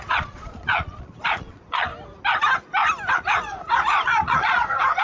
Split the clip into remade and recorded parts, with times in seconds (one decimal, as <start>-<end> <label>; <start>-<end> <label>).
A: 0.0-1.9 remade; 1.9-3.1 recorded; 3.1-5.0 remade